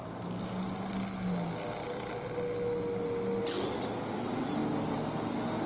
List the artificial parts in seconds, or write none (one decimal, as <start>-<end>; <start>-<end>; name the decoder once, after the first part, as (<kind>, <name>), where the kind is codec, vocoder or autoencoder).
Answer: none